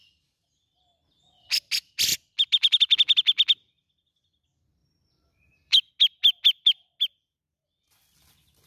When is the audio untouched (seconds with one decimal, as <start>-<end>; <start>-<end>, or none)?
0.0-4.8; 5.9-8.7